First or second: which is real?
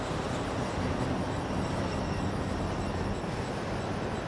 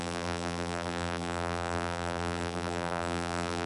first